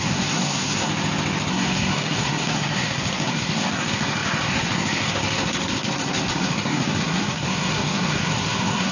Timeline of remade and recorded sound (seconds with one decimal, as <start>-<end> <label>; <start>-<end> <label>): 0.0-0.9 remade; 0.9-1.5 recorded; 1.5-8.9 remade